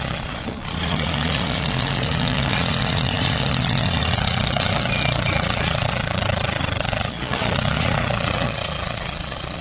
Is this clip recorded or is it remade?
remade